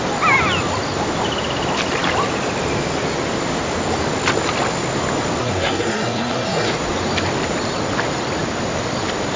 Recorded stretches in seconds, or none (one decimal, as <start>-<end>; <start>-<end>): 0.0-5.4; 6.8-9.4